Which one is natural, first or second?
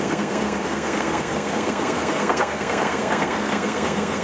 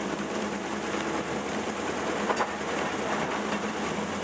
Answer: second